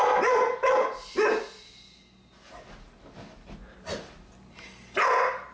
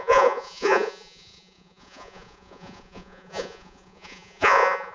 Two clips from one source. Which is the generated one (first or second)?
second